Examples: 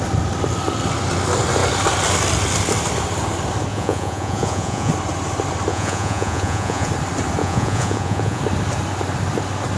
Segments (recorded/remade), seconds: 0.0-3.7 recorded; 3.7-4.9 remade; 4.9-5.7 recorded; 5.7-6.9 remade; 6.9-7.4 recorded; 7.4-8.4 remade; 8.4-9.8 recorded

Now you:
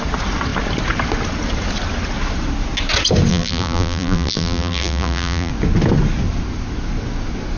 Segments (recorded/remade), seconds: 0.0-3.3 recorded; 3.3-5.5 remade; 5.5-7.6 recorded

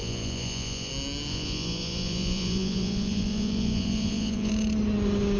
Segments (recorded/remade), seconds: 0.0-0.9 remade; 0.9-1.3 recorded; 1.3-4.5 remade; 4.5-5.4 recorded

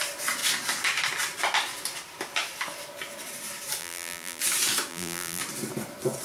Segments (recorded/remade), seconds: 0.0-3.8 recorded; 3.8-4.4 remade; 4.4-4.9 recorded; 4.9-5.4 remade; 5.4-6.2 recorded

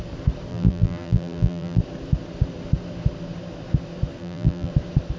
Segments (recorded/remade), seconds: 0.0-0.5 recorded; 0.5-1.8 remade; 1.8-4.2 recorded; 4.2-4.7 remade; 4.7-5.2 recorded

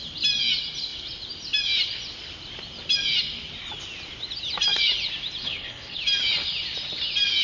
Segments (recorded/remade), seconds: 0.0-5.4 recorded; 5.4-6.0 remade; 6.0-7.4 recorded